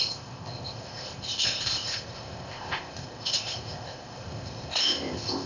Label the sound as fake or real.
fake